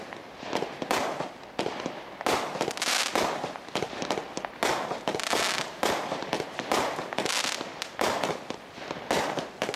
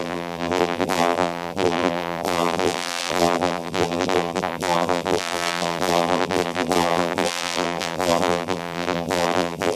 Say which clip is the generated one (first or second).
second